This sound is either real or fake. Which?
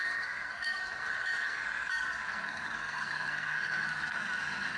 fake